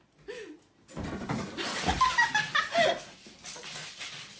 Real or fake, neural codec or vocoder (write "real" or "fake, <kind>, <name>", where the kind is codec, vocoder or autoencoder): real